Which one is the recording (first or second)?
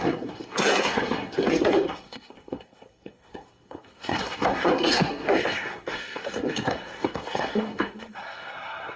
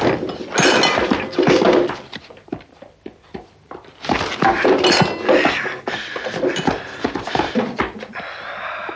second